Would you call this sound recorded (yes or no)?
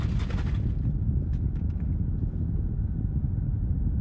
yes